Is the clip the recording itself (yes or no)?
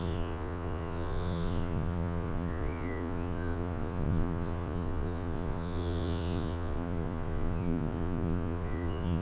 no